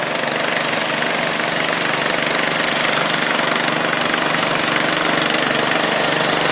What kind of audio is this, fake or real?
real